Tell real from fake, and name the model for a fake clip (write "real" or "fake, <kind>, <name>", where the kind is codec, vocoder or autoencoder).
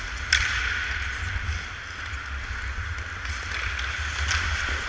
real